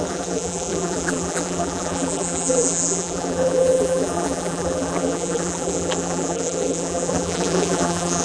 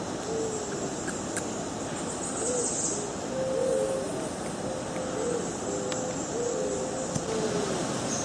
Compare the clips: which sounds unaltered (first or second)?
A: second